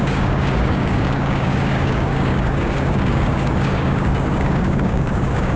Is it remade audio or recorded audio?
remade